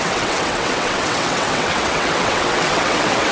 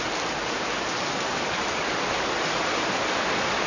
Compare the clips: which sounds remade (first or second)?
first